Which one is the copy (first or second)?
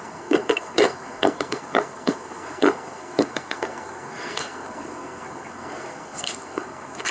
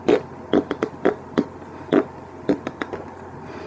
first